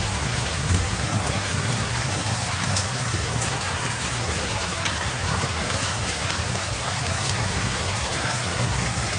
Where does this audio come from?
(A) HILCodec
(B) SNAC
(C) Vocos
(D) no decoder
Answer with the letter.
B